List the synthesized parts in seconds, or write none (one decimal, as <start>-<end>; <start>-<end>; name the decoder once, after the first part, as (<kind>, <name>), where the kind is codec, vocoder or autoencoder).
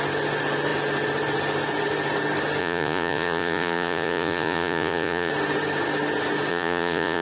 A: 2.6-5.3 (vocoder, Vocos); 6.5-7.2